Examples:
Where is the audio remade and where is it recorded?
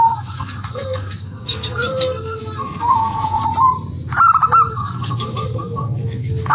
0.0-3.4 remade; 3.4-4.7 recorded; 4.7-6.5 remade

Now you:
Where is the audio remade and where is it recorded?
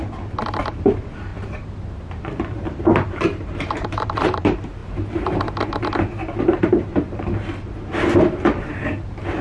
0.0-4.8 remade; 4.8-6.4 recorded; 6.4-7.5 remade; 7.5-8.6 recorded; 8.6-9.4 remade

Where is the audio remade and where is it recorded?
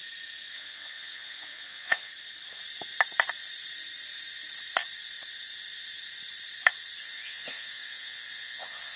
0.0-0.5 recorded; 0.5-2.1 remade; 2.1-7.0 recorded; 7.0-9.0 remade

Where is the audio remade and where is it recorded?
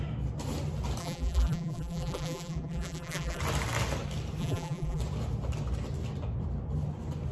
0.0-1.0 recorded; 1.0-3.4 remade; 3.4-4.4 recorded; 4.4-5.0 remade; 5.0-7.3 recorded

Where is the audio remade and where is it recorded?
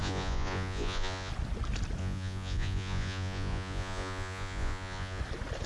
0.0-1.3 remade; 1.3-2.0 recorded; 2.0-5.2 remade; 5.2-5.7 recorded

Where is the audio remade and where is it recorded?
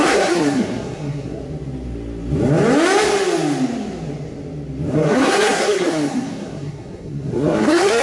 0.0-1.4 remade; 1.4-4.9 recorded; 4.9-8.0 remade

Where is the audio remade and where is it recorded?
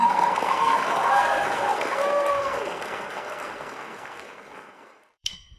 0.0-5.6 remade